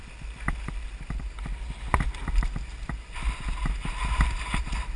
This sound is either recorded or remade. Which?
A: recorded